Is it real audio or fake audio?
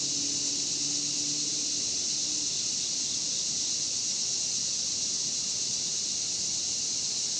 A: real